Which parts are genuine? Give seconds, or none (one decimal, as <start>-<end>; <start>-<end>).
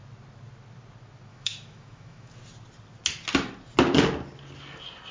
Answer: 0.0-1.3; 2.3-5.1